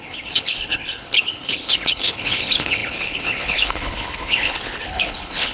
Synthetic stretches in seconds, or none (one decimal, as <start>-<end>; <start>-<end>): 0.0-5.5